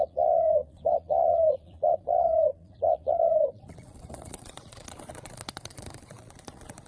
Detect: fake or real fake